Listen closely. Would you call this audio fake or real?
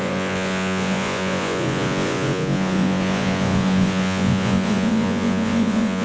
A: fake